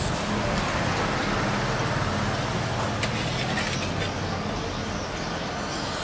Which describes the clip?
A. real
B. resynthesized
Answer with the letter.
A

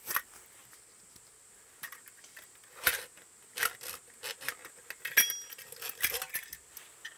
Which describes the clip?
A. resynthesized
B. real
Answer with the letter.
B